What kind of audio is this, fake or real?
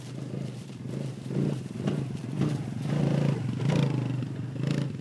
fake